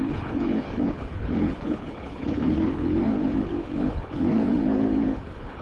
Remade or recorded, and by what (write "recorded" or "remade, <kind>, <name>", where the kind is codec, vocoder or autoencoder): remade, codec, HILCodec